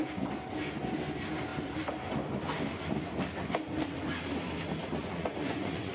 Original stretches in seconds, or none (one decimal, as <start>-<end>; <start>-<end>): 0.0-5.0